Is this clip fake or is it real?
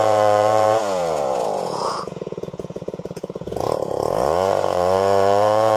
fake